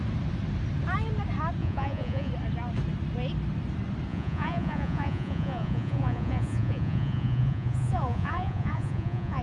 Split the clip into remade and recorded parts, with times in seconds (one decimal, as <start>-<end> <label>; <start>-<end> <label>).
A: 0.0-1.6 recorded; 1.6-2.3 remade; 2.3-4.1 recorded; 4.1-9.4 remade